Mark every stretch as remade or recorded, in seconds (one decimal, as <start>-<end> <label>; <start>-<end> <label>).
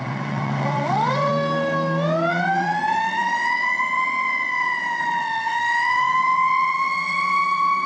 0.0-1.3 remade; 1.3-2.3 recorded; 2.3-7.9 remade